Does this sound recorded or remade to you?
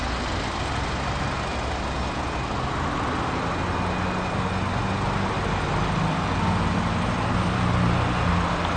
recorded